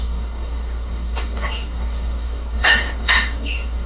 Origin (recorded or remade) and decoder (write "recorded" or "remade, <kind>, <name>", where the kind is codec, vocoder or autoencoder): remade, codec, DAC